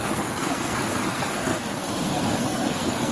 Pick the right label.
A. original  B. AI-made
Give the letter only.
B